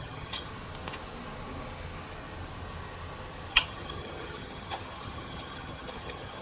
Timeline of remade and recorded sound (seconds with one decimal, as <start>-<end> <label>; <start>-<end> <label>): 0.0-0.5 remade; 0.5-3.5 recorded; 3.5-6.4 remade